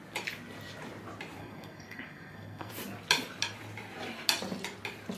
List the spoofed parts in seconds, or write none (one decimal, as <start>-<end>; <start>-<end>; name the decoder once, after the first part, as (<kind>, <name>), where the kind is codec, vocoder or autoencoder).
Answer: 1.4-2.7 (codec, SNAC)